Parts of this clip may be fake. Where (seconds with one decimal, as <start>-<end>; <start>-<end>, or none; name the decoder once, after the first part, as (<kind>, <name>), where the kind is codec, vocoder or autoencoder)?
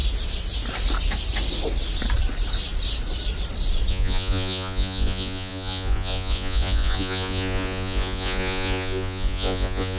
3.9-10.0 (vocoder, Vocos)